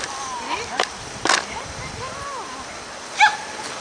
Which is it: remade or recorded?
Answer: recorded